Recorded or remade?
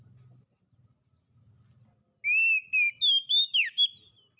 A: recorded